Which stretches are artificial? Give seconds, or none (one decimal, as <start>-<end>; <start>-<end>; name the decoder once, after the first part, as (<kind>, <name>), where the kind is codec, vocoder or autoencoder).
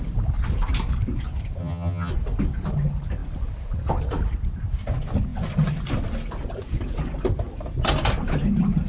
1.6-2.1 (vocoder, HiFi-GAN)